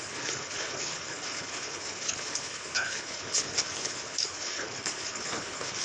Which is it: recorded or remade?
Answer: remade